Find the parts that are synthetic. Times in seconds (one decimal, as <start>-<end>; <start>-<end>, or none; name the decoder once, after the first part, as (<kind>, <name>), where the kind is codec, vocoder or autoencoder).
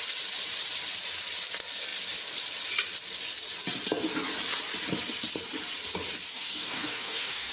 6.3-7.5 (codec, DAC)